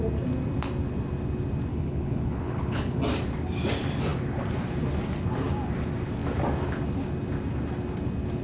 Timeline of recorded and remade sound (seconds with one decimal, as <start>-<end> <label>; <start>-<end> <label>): 0.0-1.7 recorded; 1.7-3.0 remade; 3.0-8.4 recorded